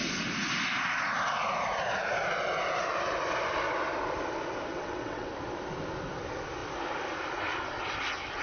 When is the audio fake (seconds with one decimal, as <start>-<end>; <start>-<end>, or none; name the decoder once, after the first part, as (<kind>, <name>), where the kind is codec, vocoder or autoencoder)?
4.7-5.3 (vocoder, WaveNeXt)